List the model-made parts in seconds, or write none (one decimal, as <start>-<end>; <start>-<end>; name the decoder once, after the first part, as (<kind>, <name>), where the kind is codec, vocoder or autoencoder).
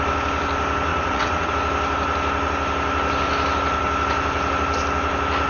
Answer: 0.9-1.5 (vocoder, WaveNeXt)